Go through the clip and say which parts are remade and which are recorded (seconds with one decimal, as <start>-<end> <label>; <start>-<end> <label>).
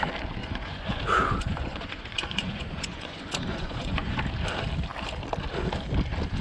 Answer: 0.0-0.4 recorded; 0.4-4.2 remade; 4.2-6.4 recorded